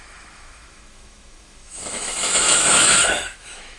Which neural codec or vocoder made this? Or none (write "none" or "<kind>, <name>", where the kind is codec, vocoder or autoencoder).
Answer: autoencoder, DAC-VAE